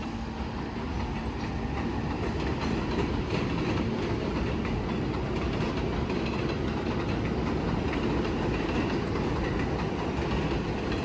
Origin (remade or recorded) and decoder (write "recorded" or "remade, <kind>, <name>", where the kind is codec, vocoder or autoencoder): recorded